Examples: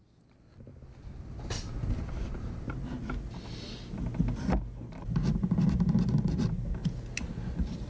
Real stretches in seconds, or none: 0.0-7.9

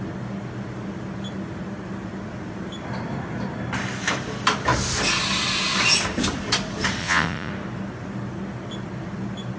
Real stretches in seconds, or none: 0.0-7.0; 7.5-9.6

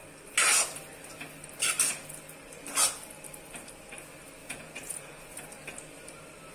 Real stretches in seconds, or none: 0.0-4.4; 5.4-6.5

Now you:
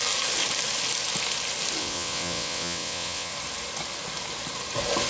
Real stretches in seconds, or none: 0.0-1.8; 3.3-5.1

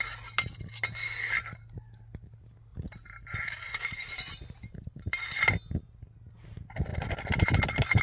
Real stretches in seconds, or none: 0.0-2.7; 5.8-6.9

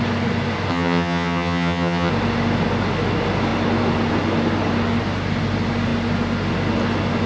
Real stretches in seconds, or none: 0.0-0.7; 2.1-7.3

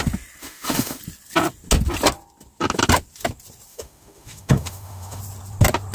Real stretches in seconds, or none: 0.0-0.4; 1.0-3.7; 5.2-5.9

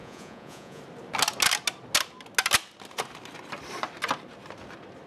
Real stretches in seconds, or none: 0.8-5.1